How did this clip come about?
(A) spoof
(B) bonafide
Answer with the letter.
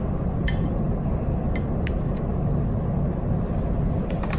B